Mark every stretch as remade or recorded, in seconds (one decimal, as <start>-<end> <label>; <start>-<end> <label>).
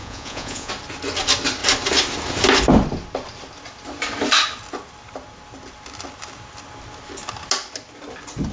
0.0-0.7 remade; 0.7-8.5 recorded